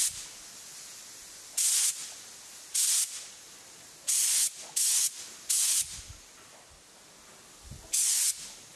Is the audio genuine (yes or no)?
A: yes